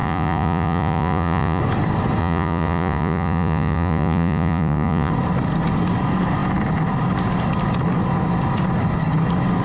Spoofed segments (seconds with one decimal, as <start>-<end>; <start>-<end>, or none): 0.0-1.6; 2.2-5.1